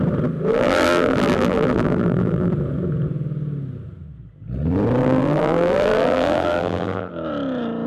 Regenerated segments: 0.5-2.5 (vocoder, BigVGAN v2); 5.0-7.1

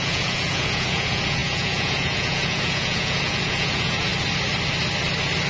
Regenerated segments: 0.0-4.1 (vocoder, Vocos)

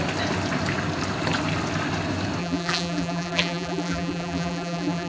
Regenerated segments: 2.4-5.1 (vocoder, BigVGAN v2)

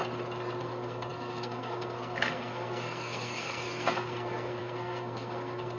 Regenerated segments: 0.6-5.8 (codec, SNAC)

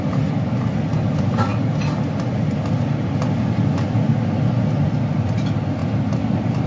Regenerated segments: none

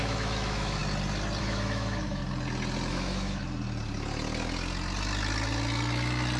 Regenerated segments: 0.0-0.8 (autoencoder, DAC-VAE); 1.4-2.2; 2.9-3.4

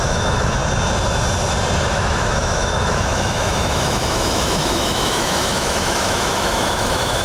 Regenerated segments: 0.0-0.6 (autoencoder, DAC-VAE); 1.9-7.2